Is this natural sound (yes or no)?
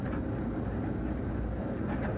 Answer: yes